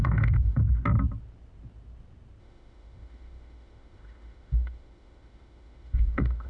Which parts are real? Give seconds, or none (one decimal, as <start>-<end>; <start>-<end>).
0.6-2.4